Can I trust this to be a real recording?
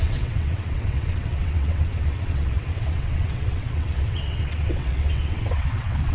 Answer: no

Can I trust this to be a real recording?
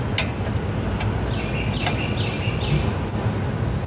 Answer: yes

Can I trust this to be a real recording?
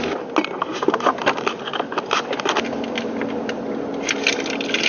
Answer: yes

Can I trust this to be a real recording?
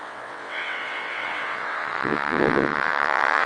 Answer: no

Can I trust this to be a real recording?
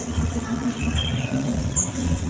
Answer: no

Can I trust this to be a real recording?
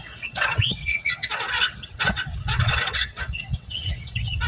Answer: no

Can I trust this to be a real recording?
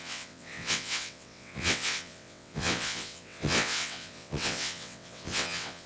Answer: no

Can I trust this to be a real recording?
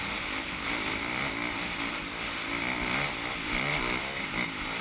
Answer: yes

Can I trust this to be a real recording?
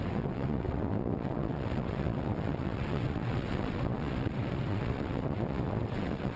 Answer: no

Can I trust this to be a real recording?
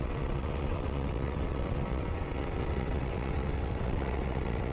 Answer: no